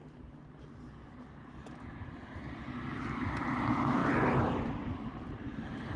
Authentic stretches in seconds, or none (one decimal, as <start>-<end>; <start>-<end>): 0.0-2.2; 3.2-6.0